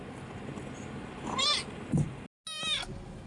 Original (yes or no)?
yes